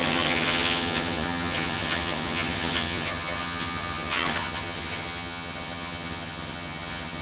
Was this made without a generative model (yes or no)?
no